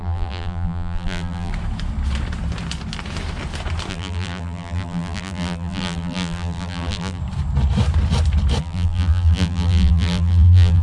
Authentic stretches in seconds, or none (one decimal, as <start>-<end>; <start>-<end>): 1.5-3.9; 7.2-8.6